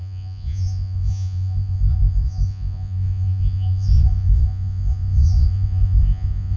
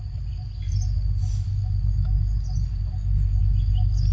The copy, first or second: first